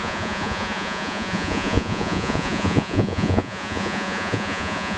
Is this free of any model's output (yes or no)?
no